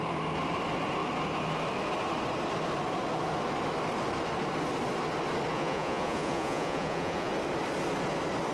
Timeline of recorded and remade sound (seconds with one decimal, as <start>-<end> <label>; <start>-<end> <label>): 0.0-5.5 recorded; 5.5-7.3 remade; 7.3-8.5 recorded

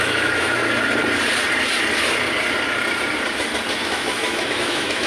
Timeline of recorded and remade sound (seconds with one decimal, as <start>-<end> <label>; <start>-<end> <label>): 0.0-0.6 remade; 0.6-3.7 recorded; 3.7-5.1 remade

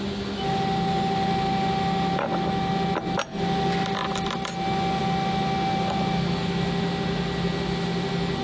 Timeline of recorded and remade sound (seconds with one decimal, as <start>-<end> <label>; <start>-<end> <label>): 0.0-8.4 recorded